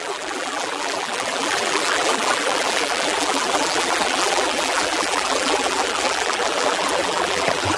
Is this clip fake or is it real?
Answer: fake